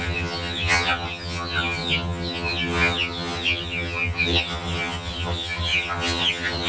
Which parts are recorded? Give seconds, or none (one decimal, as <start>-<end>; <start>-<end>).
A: none